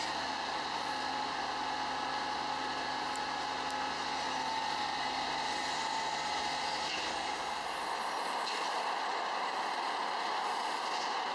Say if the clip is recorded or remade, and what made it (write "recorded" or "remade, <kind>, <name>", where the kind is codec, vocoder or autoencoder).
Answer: recorded